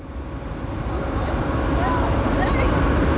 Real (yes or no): yes